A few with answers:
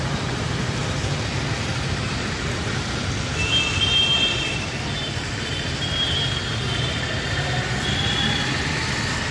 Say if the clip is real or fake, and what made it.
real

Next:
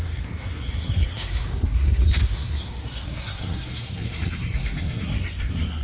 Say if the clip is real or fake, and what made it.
fake, codec, SNAC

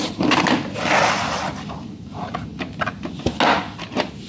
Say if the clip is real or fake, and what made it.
real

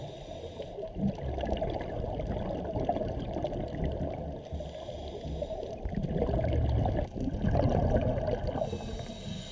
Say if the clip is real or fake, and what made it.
real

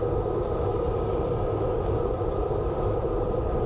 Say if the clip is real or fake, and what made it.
real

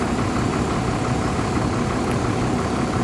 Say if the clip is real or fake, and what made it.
real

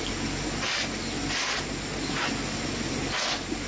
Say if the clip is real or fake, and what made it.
real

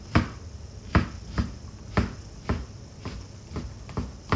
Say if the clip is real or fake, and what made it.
real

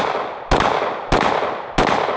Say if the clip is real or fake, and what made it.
real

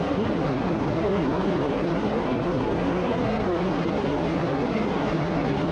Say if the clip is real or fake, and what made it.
fake, codec, SNAC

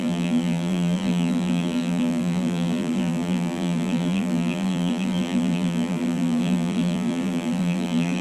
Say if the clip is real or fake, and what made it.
fake, vocoder, BigVGAN v2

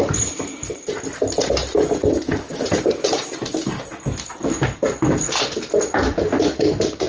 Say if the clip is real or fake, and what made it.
real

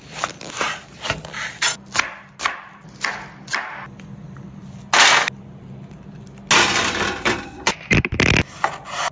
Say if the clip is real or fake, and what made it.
real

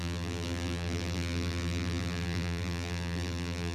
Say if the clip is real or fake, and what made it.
fake, vocoder, BigVGAN v2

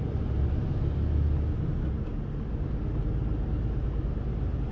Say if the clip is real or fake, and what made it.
real